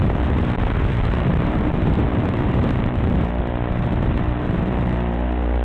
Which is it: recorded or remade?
remade